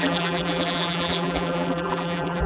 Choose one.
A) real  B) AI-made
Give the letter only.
B